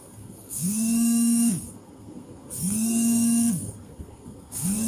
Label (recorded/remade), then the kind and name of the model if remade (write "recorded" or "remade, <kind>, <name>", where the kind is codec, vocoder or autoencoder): remade, codec, SNAC